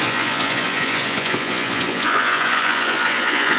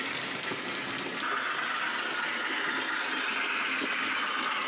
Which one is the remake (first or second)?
first